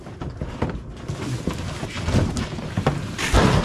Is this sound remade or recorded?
recorded